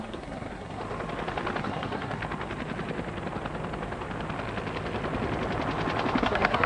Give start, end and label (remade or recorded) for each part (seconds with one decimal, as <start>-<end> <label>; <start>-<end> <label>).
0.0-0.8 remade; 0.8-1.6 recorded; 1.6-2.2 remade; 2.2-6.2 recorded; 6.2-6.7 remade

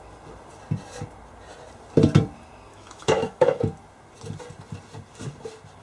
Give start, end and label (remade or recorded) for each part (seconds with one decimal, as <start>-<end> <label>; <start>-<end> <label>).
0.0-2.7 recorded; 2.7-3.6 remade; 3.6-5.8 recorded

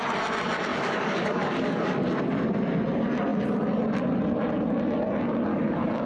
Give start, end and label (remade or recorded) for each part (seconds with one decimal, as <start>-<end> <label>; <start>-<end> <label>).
0.0-0.7 recorded; 0.7-1.9 remade; 1.9-5.5 recorded; 5.5-6.1 remade

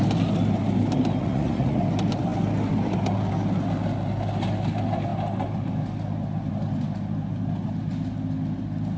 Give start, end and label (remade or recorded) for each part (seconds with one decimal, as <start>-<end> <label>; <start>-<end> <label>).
0.0-1.2 recorded; 1.2-1.8 remade; 1.8-9.0 recorded

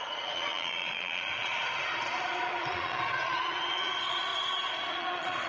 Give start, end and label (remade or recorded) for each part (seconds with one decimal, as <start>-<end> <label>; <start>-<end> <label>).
0.0-4.3 remade; 4.3-4.9 recorded; 4.9-5.5 remade

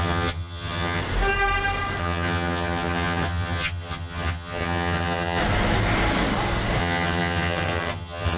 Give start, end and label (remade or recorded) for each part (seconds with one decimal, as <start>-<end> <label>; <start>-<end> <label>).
0.0-1.0 remade; 1.0-2.0 recorded; 2.0-5.4 remade; 5.4-6.8 recorded; 6.8-8.4 remade